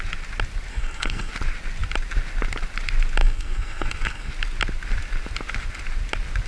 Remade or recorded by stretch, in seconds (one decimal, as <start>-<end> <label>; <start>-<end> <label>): 0.0-0.7 recorded; 0.7-1.3 remade; 1.3-3.2 recorded; 3.2-4.3 remade; 4.3-6.5 recorded